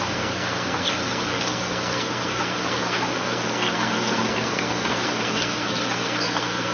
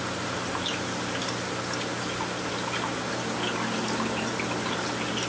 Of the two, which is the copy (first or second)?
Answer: first